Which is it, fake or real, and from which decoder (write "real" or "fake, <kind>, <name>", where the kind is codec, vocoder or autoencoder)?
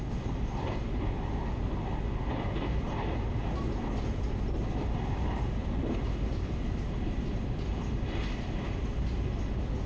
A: real